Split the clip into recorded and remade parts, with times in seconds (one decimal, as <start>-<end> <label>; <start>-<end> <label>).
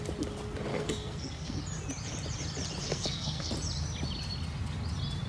0.0-0.7 recorded; 0.7-1.6 remade; 1.6-2.8 recorded; 2.8-3.5 remade; 3.5-5.3 recorded